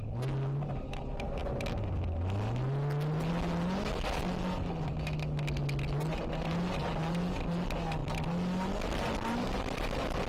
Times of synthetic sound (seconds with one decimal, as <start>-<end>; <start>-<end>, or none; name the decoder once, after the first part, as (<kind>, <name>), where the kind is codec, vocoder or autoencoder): none